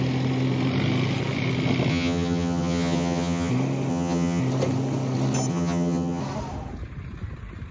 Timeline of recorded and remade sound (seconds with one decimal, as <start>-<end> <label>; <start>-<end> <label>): 0.0-1.9 recorded; 1.9-3.5 remade; 3.5-3.9 recorded; 3.9-4.4 remade; 4.4-5.5 recorded; 5.5-6.2 remade; 6.2-7.7 recorded